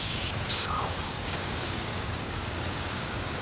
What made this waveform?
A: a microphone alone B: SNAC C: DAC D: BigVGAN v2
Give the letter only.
C